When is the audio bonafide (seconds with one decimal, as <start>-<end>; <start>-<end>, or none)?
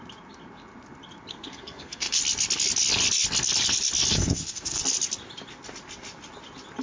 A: 0.0-1.3; 2.2-4.2; 4.8-6.8